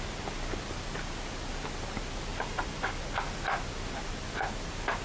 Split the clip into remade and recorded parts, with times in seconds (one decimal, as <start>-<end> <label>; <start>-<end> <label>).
0.0-2.3 recorded; 2.3-3.0 remade; 3.0-5.0 recorded

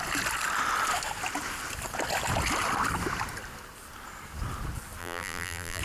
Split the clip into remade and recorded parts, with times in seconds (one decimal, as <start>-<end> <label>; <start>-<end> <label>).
0.0-5.0 recorded; 5.0-5.8 remade